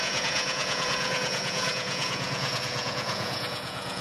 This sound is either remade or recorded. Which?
remade